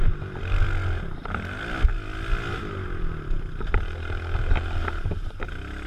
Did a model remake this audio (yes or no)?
no